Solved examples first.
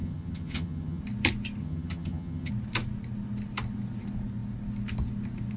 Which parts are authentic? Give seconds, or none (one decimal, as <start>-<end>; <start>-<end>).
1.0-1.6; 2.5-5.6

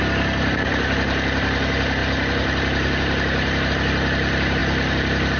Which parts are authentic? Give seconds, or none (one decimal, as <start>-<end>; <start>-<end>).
0.0-5.4

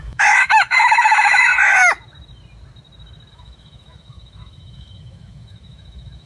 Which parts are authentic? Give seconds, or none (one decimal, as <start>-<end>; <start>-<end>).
1.5-3.3

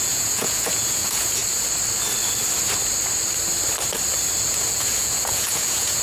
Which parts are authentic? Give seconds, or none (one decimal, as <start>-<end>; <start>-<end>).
1.4-4.5

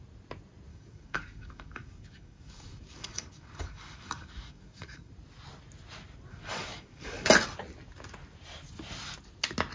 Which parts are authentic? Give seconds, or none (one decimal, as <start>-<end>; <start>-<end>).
0.0-0.7; 5.1-6.3; 7.3-9.7